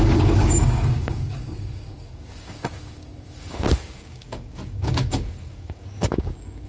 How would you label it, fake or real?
fake